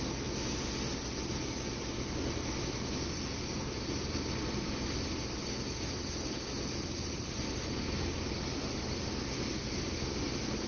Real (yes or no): yes